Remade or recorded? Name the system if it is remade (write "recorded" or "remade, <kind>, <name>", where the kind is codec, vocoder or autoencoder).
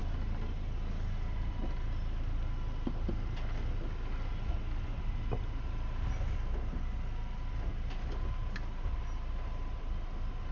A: recorded